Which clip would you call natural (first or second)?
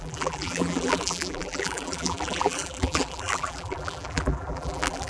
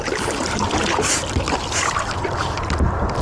second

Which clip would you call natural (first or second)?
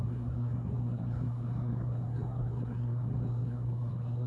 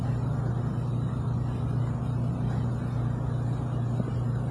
second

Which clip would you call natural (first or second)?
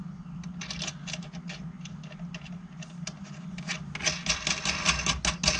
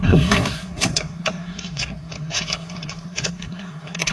first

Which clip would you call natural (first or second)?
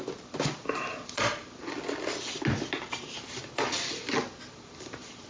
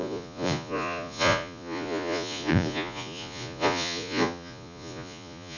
first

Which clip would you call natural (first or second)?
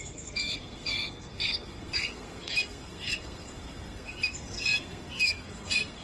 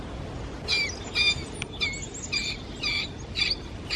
second